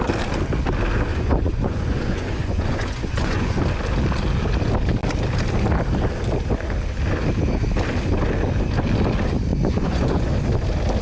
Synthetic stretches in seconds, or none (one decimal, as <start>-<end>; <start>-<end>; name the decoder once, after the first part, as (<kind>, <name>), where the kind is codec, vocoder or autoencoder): 1.1-3.6 (vocoder, Vocos); 9.5-10.3